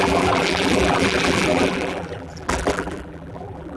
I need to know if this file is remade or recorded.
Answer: remade